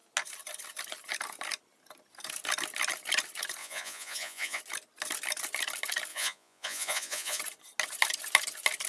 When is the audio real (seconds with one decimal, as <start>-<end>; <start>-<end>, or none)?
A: 0.0-3.6; 4.6-6.1; 7.4-8.9